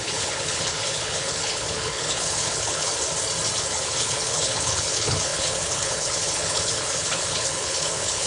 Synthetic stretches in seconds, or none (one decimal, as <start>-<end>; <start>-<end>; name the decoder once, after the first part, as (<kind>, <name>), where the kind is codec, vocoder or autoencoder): 0.0-2.9 (codec, HILCodec); 3.6-8.3